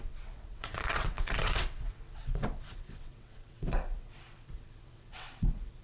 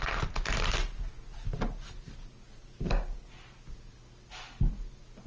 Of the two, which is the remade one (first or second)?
first